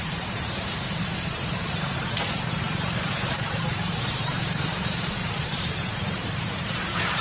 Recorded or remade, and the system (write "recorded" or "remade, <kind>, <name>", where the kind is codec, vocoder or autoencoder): remade, vocoder, BigVGAN v2